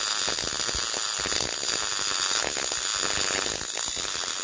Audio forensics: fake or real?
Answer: real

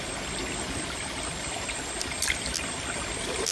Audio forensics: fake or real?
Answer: real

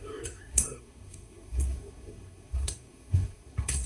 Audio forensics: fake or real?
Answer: fake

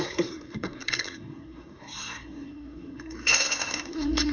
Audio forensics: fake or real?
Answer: fake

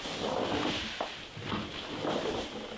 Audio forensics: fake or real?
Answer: real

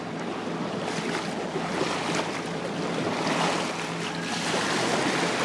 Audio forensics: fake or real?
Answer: real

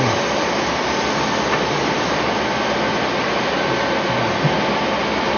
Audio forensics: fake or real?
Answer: real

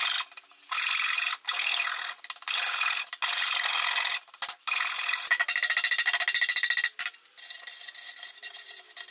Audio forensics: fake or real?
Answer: real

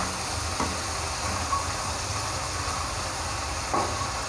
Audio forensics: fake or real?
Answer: real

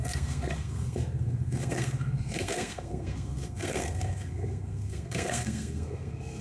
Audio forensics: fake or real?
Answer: fake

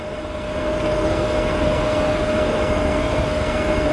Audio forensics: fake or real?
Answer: fake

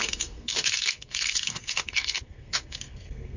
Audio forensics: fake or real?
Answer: fake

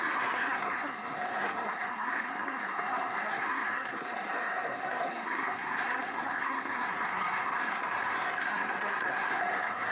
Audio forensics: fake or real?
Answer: fake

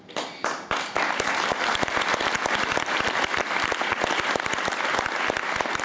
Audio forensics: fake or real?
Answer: real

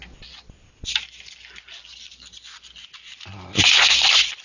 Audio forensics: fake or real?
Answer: real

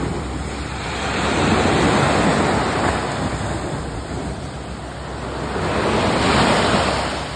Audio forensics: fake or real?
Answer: real